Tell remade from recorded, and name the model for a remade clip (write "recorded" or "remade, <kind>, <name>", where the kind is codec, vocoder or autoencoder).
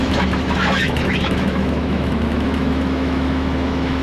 remade, autoencoder, DAC-VAE